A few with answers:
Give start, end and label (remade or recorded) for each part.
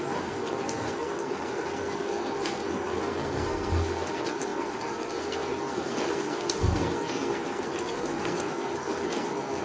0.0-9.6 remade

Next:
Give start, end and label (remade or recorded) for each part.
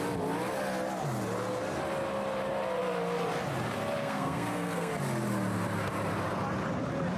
0.0-4.0 recorded; 4.0-4.9 remade; 4.9-7.2 recorded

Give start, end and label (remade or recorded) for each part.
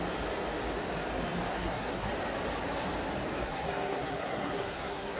0.0-1.5 recorded; 1.5-2.1 remade; 2.1-3.4 recorded; 3.4-5.2 remade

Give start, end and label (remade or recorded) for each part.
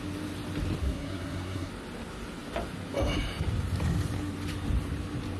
0.0-0.8 recorded; 0.8-1.7 remade; 1.7-5.4 recorded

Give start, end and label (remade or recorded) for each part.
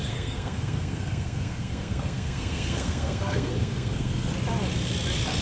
0.0-4.3 remade; 4.3-5.4 recorded